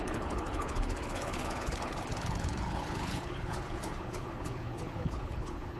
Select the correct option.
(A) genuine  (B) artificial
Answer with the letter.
B